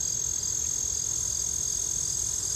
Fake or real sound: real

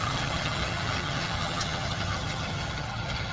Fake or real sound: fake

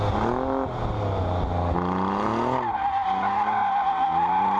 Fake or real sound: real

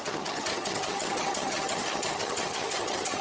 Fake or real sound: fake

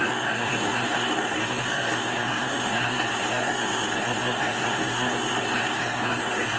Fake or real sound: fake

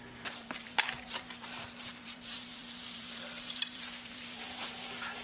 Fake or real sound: fake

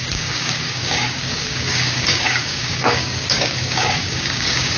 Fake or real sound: fake